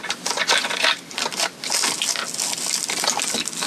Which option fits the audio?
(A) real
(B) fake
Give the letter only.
A